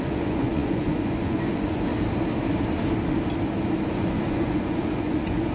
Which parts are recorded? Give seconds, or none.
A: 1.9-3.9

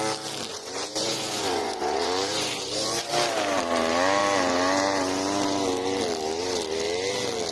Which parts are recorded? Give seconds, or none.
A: 0.0-0.5; 3.1-7.5

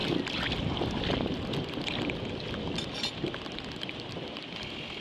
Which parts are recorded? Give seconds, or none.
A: 0.0-5.0

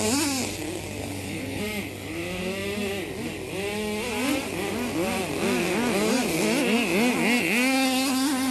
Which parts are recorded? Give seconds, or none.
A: 0.0-1.0; 1.6-8.5

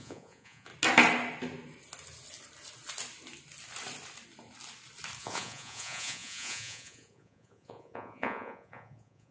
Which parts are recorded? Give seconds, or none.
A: 0.7-5.2

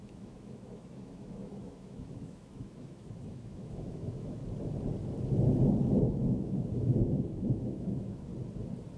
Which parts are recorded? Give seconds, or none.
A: 4.4-5.9; 8.3-9.0

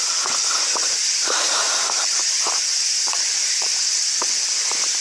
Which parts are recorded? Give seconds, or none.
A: 0.0-0.8; 3.8-5.0